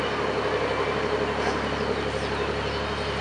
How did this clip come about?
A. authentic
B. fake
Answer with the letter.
A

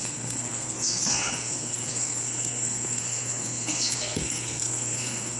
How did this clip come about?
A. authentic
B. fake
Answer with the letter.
B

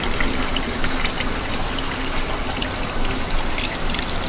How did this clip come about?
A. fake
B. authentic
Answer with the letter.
B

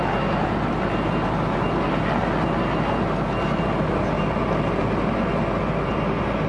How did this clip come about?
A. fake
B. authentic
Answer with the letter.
B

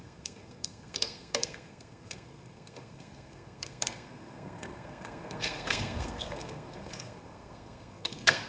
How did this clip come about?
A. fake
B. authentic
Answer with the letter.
A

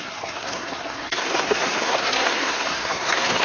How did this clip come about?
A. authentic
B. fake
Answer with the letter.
B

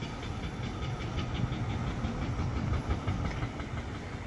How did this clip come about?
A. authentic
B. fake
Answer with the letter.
A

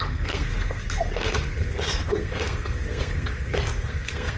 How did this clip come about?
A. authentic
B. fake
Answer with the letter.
B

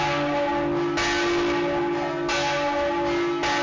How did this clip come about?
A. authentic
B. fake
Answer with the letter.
A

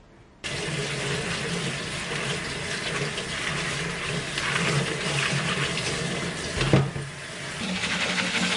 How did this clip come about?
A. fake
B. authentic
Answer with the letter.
B